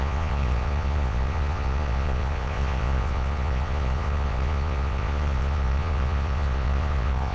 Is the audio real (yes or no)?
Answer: no